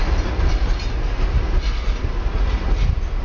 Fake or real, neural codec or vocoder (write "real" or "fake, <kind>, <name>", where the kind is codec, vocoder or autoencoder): real